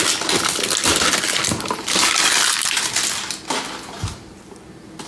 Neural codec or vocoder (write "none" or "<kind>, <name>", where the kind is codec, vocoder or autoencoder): none